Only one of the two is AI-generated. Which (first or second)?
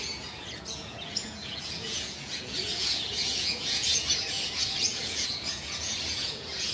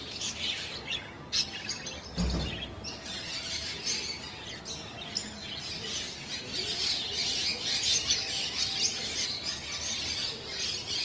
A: first